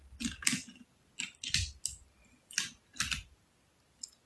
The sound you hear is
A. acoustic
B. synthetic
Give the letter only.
A